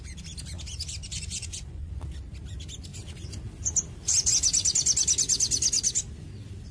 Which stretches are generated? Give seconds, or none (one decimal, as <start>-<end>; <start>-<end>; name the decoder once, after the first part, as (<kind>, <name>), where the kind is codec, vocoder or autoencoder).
1.0-1.9 (vocoder, Vocos)